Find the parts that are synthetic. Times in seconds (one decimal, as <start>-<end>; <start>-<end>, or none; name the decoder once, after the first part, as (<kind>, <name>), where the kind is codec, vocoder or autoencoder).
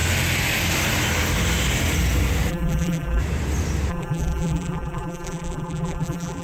2.5-3.2 (vocoder, BigVGAN v2); 3.9-6.4